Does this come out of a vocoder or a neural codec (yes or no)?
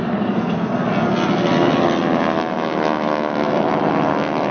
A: no